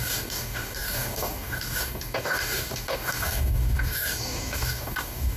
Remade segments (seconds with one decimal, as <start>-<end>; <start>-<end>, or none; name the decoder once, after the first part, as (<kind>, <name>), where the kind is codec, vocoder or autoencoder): 0.0-5.4 (codec, DAC)